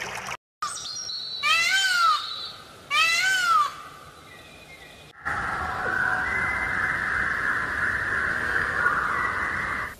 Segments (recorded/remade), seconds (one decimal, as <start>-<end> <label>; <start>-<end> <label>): 0.0-8.3 recorded; 8.3-8.8 remade; 8.8-10.0 recorded